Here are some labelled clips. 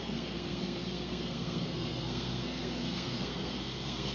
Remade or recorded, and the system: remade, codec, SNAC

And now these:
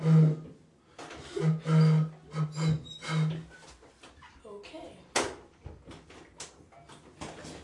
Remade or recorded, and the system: recorded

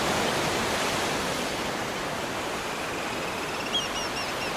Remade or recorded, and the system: recorded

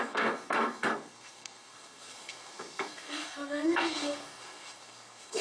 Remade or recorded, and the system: remade, codec, SNAC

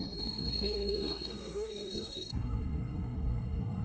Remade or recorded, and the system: remade, codec, SNAC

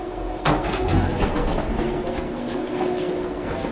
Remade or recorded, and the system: remade, codec, SNAC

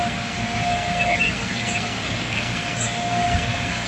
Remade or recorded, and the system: remade, codec, SNAC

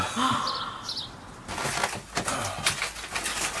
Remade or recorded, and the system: recorded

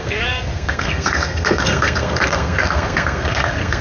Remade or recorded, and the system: remade, codec, SNAC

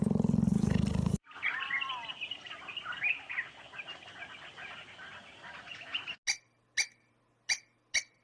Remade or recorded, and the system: recorded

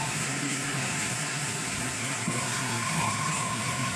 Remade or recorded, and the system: remade, codec, SNAC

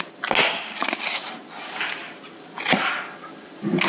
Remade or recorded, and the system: recorded